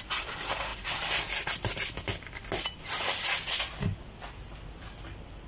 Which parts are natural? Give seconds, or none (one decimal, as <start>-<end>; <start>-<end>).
0.0-5.5